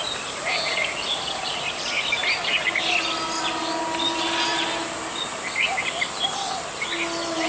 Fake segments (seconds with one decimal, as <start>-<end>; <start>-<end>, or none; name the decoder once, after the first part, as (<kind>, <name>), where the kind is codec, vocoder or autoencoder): 0.0-2.1 (vocoder, BigVGAN v2)